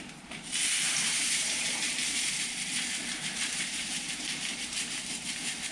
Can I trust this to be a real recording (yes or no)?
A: no